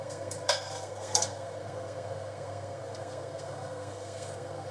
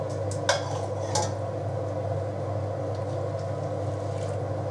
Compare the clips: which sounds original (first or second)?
second